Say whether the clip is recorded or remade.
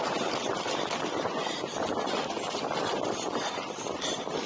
recorded